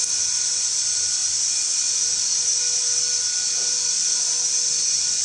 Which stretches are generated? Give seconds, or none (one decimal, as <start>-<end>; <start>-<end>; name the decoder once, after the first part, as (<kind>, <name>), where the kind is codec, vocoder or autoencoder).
none